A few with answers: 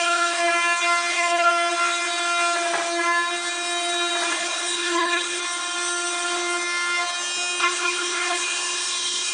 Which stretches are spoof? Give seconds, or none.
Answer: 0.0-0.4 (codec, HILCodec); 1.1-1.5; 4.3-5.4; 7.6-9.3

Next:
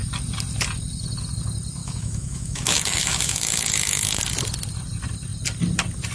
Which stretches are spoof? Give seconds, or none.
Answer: 1.8-4.2 (autoencoder, DAC-VAE)

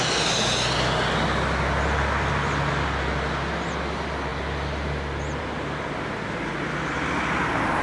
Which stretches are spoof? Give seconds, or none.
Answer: none